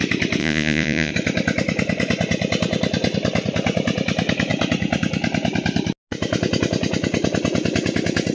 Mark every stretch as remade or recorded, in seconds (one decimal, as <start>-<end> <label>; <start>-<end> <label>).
0.0-0.4 recorded; 0.4-1.1 remade; 1.1-8.3 recorded